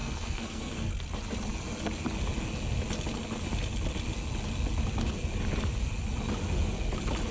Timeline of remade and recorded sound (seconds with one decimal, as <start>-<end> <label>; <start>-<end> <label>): 0.0-0.9 remade; 0.9-7.3 recorded